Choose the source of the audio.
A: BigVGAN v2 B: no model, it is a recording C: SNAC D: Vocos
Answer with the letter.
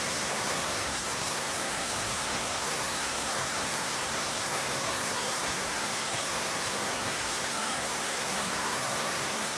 C